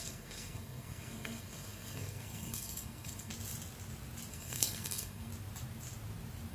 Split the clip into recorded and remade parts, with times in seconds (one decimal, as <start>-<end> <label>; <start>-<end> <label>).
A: 0.0-3.3 remade; 3.3-4.3 recorded; 4.3-5.3 remade; 5.3-6.5 recorded